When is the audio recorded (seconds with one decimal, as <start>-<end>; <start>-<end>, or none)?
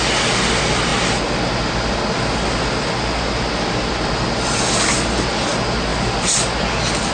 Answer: 0.0-7.1